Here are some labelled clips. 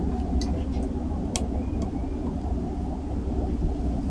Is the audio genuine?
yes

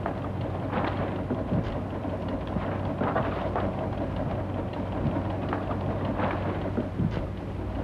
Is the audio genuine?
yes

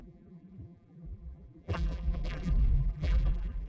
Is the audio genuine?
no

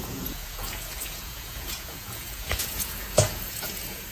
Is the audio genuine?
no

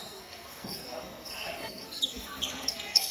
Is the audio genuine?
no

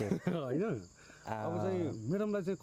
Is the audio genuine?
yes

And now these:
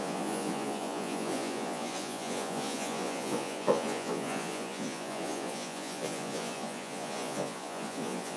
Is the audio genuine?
no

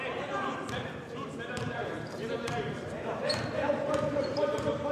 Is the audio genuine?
no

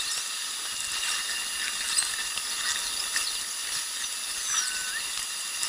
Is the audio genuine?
yes